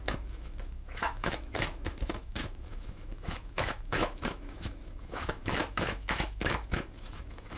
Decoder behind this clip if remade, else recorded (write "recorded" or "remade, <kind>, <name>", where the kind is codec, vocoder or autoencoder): remade, autoencoder, DAC-VAE